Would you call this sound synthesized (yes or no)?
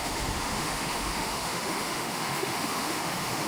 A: yes